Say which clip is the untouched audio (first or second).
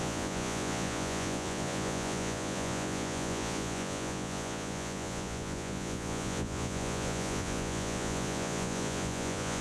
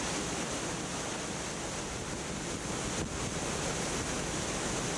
second